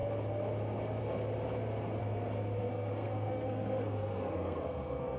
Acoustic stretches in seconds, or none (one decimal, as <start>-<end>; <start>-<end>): 0.0-2.0